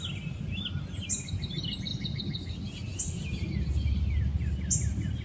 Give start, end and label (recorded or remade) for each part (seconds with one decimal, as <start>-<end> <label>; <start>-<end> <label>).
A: 0.0-5.2 recorded